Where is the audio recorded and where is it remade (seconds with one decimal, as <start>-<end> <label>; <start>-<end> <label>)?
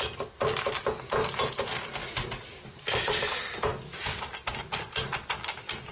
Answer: 0.0-2.0 recorded; 2.0-3.0 remade; 3.0-3.7 recorded; 3.7-5.0 remade; 5.0-5.9 recorded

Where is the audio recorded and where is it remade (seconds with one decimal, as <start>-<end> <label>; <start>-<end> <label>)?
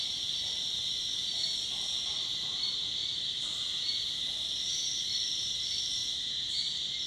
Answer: 0.0-0.8 remade; 0.8-2.2 recorded; 2.2-6.0 remade; 6.0-7.1 recorded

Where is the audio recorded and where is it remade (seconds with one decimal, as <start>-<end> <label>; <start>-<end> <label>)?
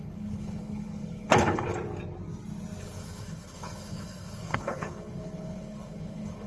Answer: 0.0-1.7 remade; 1.7-2.8 recorded; 2.8-6.5 remade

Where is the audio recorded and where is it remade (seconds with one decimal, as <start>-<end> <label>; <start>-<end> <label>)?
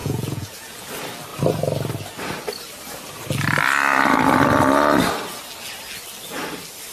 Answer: 0.0-0.9 remade; 0.9-6.9 recorded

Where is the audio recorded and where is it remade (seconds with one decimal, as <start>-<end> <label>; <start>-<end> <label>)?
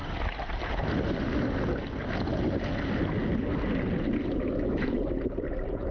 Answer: 0.0-5.9 recorded